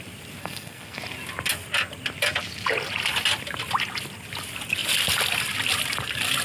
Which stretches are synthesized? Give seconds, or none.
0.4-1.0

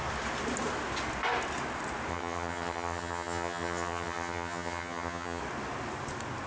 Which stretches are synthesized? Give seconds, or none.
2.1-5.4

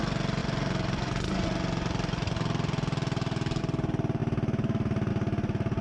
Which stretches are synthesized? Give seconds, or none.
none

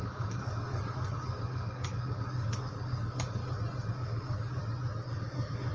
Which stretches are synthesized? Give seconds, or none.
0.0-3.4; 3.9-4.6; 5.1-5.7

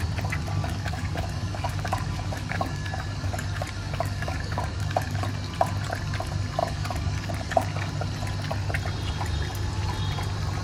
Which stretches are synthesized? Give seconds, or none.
0.6-5.2; 6.6-7.9

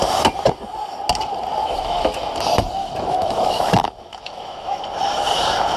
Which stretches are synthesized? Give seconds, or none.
1.6-2.3; 2.8-4.8

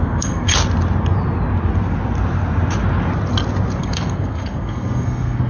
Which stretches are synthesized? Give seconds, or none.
0.0-0.5; 3.8-5.5